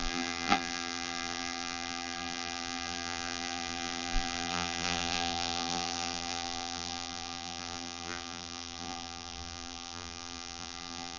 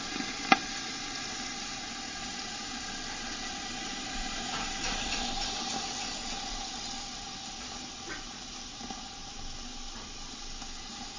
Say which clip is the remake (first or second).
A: first